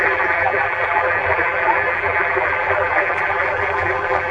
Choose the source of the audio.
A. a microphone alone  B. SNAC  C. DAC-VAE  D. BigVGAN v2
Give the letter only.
D